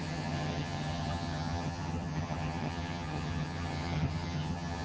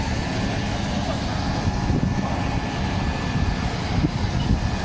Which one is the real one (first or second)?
second